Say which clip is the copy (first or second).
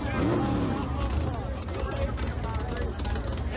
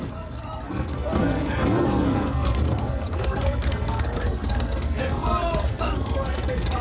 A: second